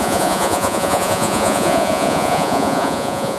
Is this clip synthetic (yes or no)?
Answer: yes